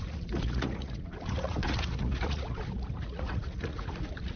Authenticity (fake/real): fake